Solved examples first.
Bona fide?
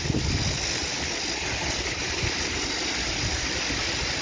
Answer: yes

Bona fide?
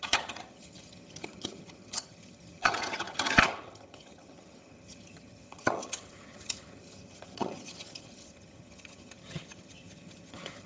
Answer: no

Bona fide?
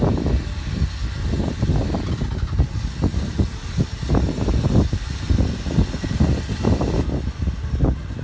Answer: yes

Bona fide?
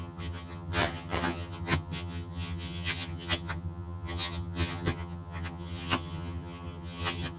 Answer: no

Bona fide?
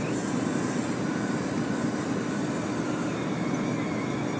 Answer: yes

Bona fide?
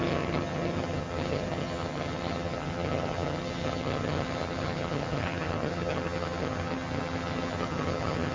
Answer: no